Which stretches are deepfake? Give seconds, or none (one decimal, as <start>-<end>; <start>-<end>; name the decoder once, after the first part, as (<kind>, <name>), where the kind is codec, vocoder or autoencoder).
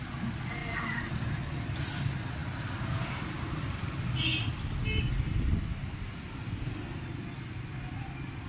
none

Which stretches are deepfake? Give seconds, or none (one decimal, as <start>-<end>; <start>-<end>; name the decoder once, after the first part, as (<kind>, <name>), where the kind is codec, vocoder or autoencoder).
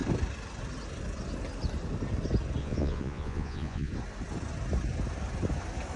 2.6-3.9 (vocoder, Vocos)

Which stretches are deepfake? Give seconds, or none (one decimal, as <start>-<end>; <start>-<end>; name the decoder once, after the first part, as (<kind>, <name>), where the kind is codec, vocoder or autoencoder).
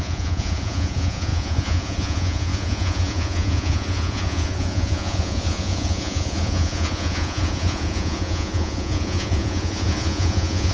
0.0-10.7 (vocoder, Vocos)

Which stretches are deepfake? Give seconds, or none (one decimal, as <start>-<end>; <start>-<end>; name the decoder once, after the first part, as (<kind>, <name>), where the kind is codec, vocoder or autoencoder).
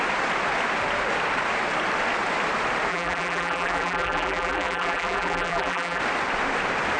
2.9-6.0 (vocoder, BigVGAN v2)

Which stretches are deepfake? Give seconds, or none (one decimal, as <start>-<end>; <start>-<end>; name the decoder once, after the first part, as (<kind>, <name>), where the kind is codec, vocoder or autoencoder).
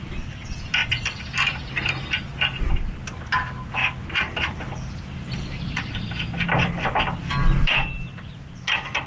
none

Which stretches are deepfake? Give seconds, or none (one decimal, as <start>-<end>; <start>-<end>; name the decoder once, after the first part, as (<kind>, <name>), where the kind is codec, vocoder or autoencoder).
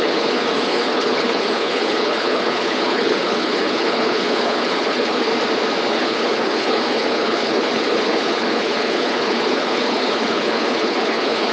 0.0-5.3 (codec, HILCodec); 5.9-11.5